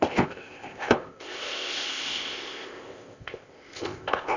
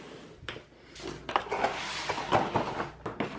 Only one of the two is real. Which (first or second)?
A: second